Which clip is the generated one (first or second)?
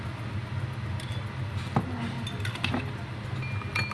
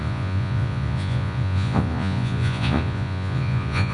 second